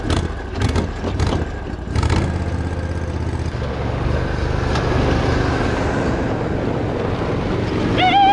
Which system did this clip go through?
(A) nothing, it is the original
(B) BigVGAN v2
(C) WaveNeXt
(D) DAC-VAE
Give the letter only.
A